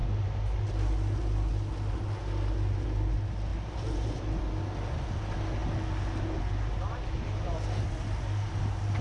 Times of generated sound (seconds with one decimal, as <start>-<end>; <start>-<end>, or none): 3.5-4.4